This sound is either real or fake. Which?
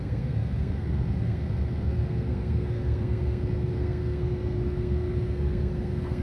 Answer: fake